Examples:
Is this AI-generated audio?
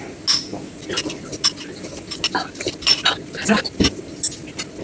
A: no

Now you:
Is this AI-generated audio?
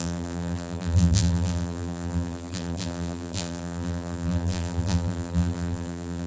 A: yes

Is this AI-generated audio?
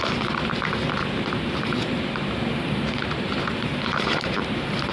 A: yes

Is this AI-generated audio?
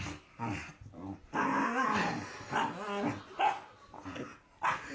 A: no